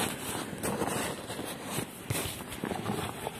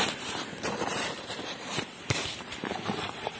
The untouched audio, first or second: first